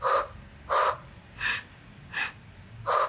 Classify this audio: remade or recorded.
recorded